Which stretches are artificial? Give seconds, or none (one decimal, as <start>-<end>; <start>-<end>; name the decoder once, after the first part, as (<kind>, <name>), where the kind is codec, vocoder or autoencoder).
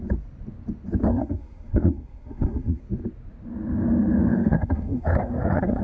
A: 1.1-2.8 (codec, SNAC); 4.3-5.8